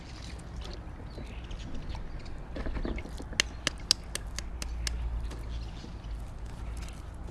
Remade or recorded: recorded